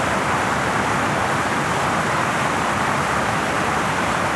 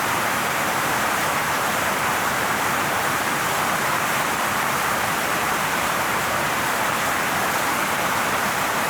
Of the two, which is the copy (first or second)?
second